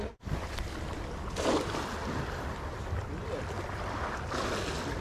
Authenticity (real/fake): real